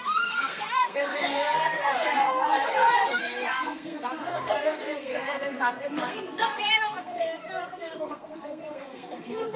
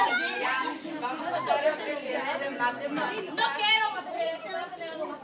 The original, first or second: second